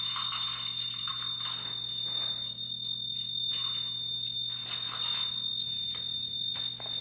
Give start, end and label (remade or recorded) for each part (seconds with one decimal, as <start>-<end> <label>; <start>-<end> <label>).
0.0-7.0 recorded